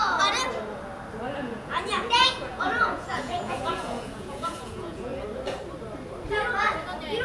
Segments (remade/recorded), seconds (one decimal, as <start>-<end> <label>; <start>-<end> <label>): 0.0-0.4 remade; 0.4-1.3 recorded; 1.3-5.1 remade; 5.1-7.2 recorded